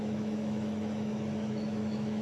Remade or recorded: remade